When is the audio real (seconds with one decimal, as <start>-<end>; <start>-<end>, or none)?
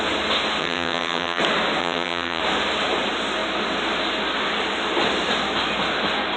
0.0-0.6; 1.4-1.8; 2.4-6.4